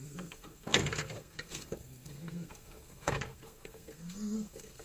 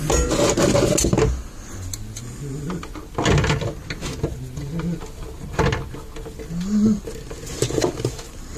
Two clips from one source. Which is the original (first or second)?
second